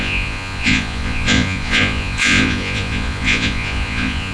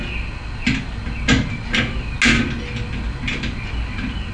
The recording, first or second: second